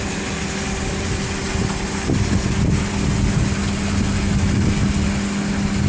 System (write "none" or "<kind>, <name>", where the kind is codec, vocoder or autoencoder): none